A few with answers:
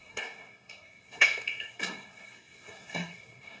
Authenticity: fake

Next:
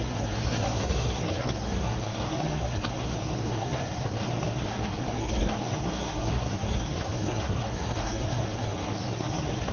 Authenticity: fake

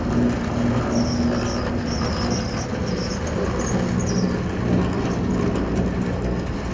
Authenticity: real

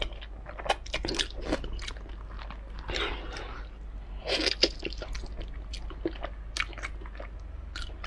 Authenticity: real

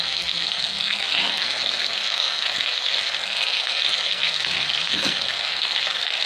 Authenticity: fake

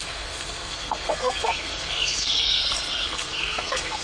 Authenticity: fake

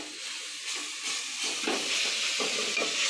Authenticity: real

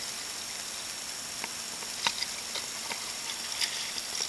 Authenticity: real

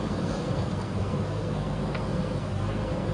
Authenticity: fake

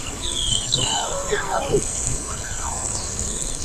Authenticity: fake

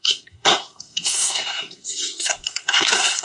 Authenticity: fake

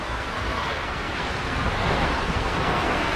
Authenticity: fake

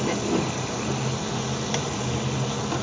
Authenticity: real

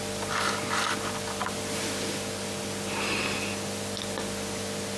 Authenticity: real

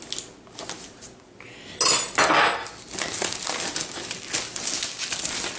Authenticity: real